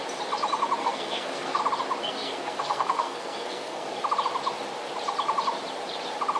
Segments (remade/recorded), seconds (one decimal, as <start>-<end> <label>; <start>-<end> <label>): 0.0-0.8 recorded; 0.8-1.6 remade; 1.6-2.0 recorded; 2.0-3.9 remade; 3.9-6.4 recorded